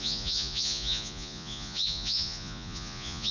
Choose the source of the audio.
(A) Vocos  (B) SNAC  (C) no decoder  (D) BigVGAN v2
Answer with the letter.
A